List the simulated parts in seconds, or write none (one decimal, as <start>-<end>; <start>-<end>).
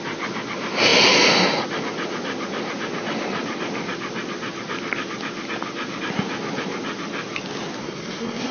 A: 7.8-8.5